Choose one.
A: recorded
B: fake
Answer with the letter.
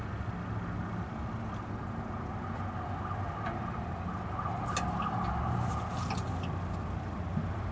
A